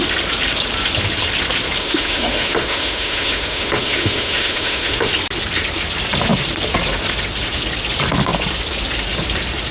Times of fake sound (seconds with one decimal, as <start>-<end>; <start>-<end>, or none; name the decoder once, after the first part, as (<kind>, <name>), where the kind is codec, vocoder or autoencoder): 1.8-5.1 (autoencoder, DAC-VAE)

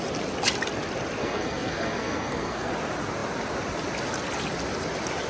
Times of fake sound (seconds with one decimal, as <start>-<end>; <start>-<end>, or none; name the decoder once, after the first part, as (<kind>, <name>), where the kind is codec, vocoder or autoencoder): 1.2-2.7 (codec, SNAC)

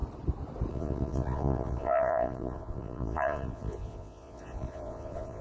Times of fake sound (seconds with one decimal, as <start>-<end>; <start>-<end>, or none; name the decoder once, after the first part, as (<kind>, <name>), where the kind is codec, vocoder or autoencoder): 0.7-5.4 (vocoder, Vocos)

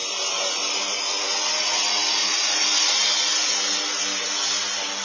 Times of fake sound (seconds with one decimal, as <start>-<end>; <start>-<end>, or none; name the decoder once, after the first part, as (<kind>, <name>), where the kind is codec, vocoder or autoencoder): 0.0-3.0 (vocoder, BigVGAN v2)